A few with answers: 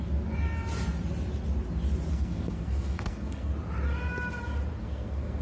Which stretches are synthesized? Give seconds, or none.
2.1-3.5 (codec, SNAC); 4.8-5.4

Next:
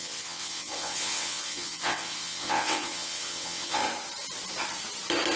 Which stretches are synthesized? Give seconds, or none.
0.0-3.8 (vocoder, WaveNeXt)

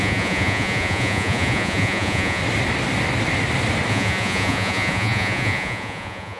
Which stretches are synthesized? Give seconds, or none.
0.0-2.4 (vocoder, Vocos); 3.9-6.4